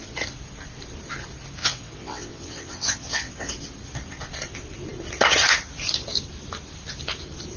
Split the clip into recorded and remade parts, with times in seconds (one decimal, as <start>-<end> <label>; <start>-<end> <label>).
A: 0.0-1.6 recorded; 1.6-3.5 remade; 3.5-7.6 recorded